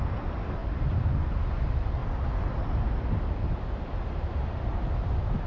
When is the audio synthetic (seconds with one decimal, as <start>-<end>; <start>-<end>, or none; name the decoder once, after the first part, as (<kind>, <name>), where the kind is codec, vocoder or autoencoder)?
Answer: 0.6-1.5 (vocoder, BigVGAN v2)